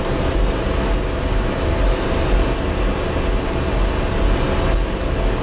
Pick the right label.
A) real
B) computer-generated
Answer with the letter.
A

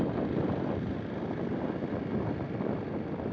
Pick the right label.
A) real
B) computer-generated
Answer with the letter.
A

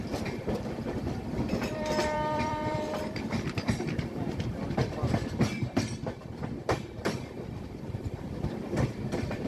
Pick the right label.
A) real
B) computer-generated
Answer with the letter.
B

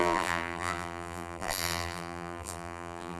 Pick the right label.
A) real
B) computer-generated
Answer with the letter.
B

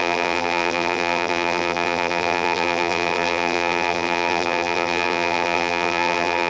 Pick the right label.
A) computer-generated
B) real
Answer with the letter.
A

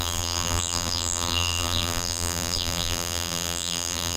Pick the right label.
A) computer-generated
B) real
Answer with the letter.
A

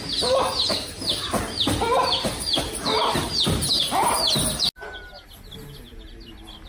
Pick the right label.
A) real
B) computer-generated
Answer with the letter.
A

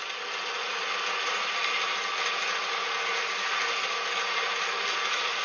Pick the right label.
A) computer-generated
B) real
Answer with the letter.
A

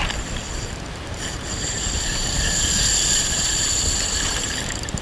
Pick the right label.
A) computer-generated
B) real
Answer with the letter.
A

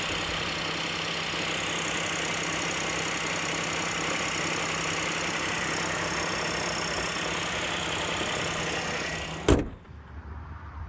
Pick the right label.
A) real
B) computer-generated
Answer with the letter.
A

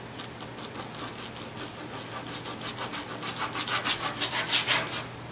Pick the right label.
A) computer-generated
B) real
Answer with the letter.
B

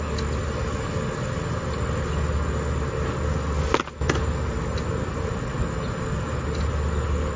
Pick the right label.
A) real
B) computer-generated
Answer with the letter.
A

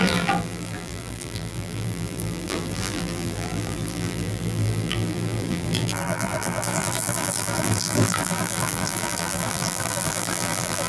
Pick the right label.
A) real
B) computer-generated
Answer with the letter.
B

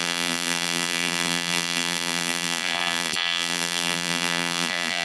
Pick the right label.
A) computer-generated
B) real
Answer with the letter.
A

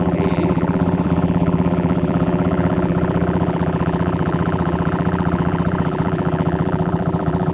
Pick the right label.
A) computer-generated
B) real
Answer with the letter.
A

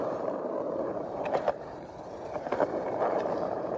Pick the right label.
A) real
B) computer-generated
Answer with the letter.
B